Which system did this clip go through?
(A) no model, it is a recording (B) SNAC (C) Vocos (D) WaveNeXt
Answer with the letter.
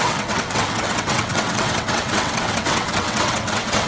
D